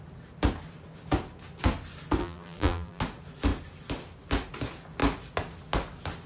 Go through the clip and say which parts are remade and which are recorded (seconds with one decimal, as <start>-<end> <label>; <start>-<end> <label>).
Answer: 0.0-2.2 recorded; 2.2-3.0 remade; 3.0-6.3 recorded